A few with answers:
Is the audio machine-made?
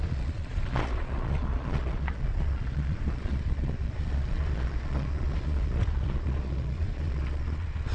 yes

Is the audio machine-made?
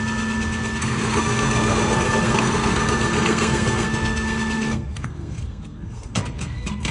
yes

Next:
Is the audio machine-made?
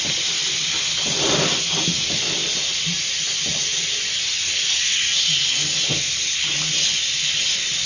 no